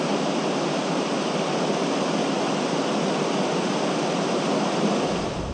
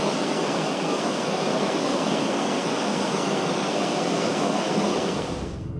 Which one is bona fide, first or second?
first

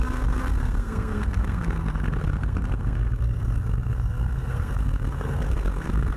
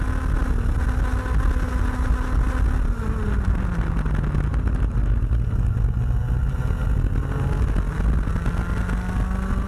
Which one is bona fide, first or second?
second